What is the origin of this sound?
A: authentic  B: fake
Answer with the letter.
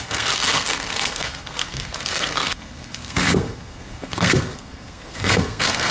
B